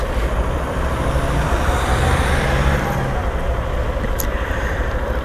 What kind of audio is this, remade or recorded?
remade